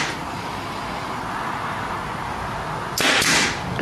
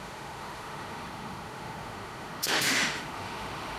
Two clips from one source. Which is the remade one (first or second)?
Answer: second